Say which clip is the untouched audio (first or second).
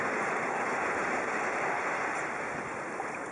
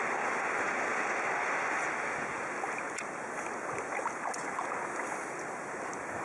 second